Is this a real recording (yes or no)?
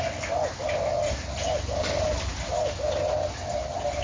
yes